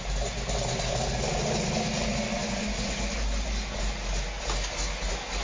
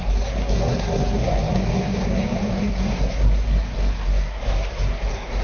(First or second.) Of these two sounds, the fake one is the second